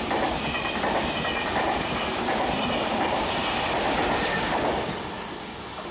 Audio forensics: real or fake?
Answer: real